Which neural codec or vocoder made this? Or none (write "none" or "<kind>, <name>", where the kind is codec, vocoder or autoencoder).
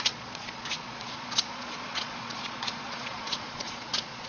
vocoder, Vocos